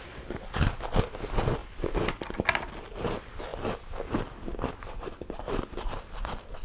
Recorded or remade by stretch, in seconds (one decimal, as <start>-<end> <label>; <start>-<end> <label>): 0.0-1.6 recorded; 1.6-2.3 remade; 2.3-3.5 recorded; 3.5-4.7 remade; 4.7-6.6 recorded